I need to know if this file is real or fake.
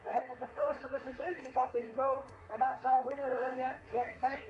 fake